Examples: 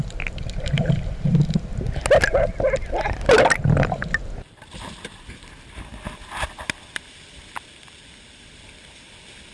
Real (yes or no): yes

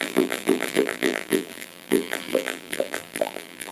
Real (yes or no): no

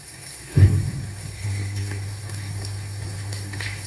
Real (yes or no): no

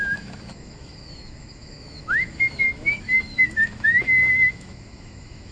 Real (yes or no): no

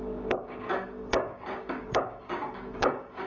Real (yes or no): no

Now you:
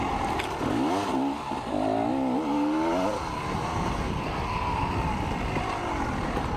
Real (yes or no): yes